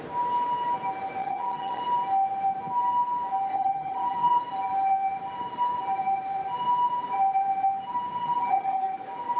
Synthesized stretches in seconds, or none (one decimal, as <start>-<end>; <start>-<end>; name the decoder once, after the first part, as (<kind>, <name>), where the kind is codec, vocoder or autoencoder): 1.2-1.8 (vocoder, HiFi-GAN); 3.5-4.4; 8.2-8.8